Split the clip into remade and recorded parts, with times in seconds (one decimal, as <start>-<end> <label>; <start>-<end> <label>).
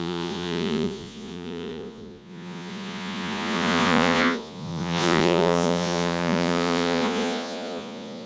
0.0-8.3 remade